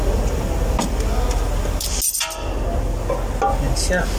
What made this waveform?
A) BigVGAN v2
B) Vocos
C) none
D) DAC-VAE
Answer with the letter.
C